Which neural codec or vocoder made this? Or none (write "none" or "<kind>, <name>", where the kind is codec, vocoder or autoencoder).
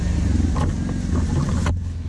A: none